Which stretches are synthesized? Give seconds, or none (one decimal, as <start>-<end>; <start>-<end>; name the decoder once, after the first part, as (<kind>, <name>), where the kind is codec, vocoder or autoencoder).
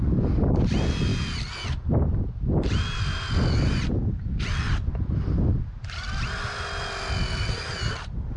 none